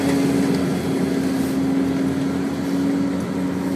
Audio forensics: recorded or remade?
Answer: recorded